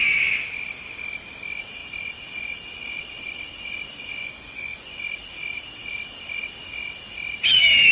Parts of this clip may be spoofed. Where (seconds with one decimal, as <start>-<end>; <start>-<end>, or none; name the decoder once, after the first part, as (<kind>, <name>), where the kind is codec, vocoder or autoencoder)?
4.2-5.0 (vocoder, Vocos)